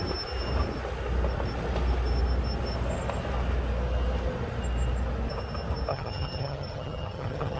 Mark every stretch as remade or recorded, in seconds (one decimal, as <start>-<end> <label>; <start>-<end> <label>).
0.0-5.9 recorded; 5.9-7.6 remade